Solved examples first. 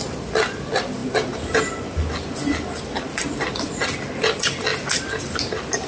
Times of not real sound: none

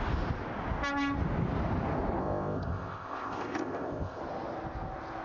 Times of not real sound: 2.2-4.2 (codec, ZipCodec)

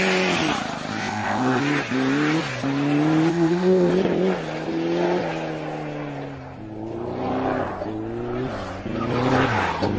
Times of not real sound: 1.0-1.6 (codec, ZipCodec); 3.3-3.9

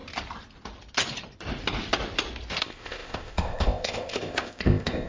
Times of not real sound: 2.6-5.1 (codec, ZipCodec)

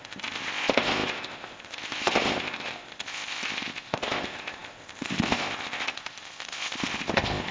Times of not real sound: 0.0-7.5 (codec, ZipCodec)

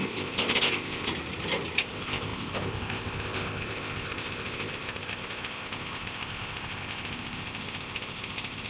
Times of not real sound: 0.0-1.1 (codec, ZipCodec); 1.8-8.7

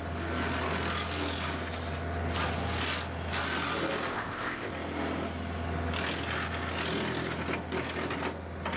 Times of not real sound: 4.1-4.7 (codec, ZipCodec)

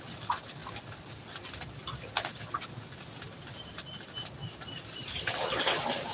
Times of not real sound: none